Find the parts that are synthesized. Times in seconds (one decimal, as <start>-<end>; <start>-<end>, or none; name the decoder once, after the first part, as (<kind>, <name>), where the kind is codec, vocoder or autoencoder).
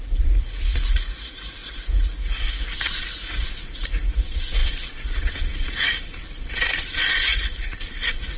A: 0.0-8.4 (vocoder, Vocos)